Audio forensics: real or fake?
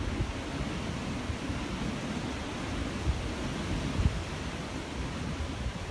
real